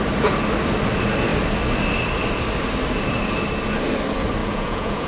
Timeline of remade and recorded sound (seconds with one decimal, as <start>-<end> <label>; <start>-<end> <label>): 0.0-4.4 recorded; 4.4-5.1 remade